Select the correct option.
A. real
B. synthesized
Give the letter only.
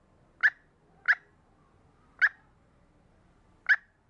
A